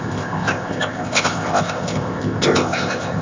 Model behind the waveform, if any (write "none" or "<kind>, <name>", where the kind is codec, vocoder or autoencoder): codec, ZipCodec